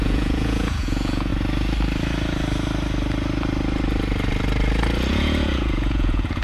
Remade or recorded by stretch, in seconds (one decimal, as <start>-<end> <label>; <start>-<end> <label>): 0.0-1.3 remade; 1.3-5.1 recorded; 5.1-6.4 remade